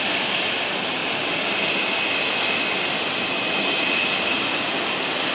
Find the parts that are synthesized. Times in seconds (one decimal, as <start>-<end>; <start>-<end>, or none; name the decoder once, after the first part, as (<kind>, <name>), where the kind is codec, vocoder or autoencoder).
0.0-1.0 (vocoder, BigVGAN v2); 4.2-5.3